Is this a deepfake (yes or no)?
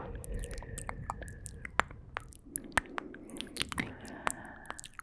no